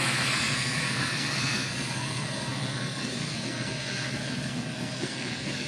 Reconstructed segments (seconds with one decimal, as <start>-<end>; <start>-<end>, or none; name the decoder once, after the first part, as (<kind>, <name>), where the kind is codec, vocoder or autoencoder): 0.0-5.7 (codec, SNAC)